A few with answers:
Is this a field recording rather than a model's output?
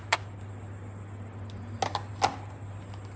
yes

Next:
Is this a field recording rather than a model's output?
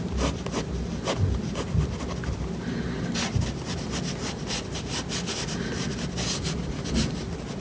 yes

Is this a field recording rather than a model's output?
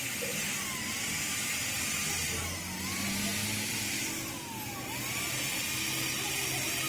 yes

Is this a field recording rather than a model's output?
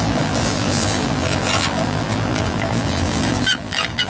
no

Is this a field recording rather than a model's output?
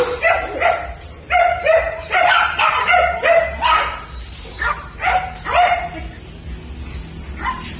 no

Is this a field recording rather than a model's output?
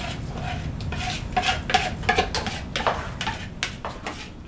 yes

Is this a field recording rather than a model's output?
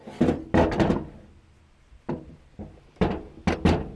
yes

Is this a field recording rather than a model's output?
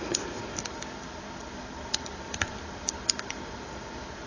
no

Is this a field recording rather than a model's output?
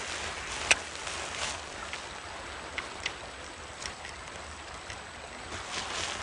yes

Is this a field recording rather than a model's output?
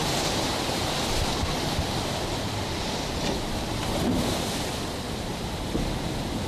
yes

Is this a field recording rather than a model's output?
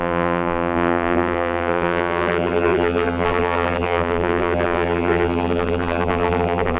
no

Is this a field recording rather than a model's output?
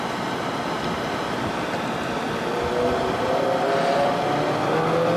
yes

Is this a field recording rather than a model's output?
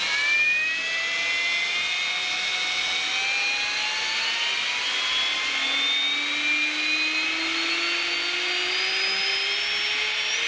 yes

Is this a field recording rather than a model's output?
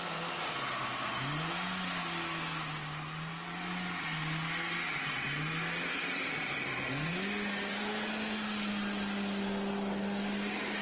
yes